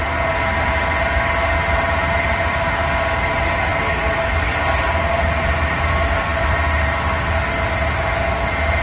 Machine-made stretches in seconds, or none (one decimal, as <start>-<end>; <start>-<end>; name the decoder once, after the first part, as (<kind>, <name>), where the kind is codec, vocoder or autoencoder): none